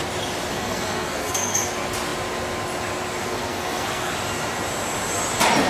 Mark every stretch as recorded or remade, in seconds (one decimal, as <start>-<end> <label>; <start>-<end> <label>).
0.0-0.5 recorded; 0.5-1.7 remade; 1.7-3.2 recorded; 3.2-4.1 remade; 4.1-5.7 recorded